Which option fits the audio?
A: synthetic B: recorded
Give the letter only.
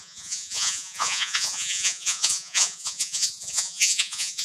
A